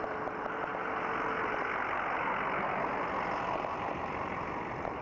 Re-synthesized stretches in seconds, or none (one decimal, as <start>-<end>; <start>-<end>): none